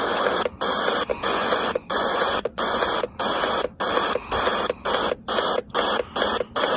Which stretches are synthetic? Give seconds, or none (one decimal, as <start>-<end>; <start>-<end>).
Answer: 1.1-2.8

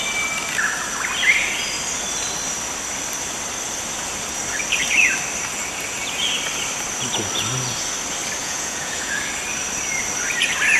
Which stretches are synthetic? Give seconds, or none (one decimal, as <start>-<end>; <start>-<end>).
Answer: 8.4-9.3